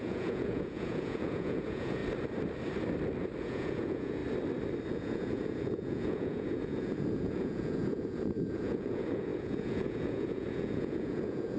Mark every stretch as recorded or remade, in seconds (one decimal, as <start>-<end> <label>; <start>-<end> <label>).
0.0-2.0 remade; 2.0-3.4 recorded; 3.4-4.2 remade; 4.2-4.9 recorded; 4.9-11.6 remade